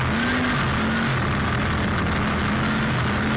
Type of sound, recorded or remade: recorded